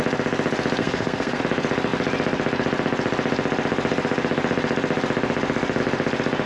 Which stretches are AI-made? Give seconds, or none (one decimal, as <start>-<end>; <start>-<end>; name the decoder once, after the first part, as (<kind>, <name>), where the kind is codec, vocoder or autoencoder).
0.8-1.4 (codec, SNAC)